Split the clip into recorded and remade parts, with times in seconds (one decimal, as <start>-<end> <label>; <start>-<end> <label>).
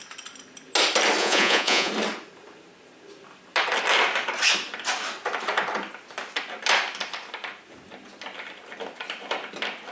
0.0-1.2 recorded; 1.2-1.9 remade; 1.9-9.9 recorded